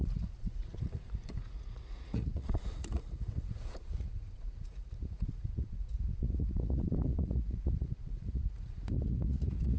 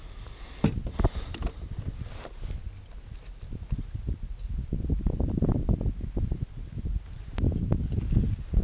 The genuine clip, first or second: second